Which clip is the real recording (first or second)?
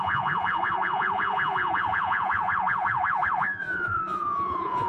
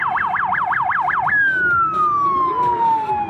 second